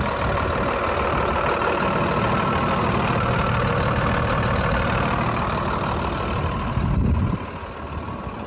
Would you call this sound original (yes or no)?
yes